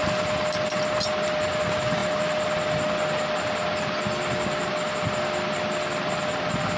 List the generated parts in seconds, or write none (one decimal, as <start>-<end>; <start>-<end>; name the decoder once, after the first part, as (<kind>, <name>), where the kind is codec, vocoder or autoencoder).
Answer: none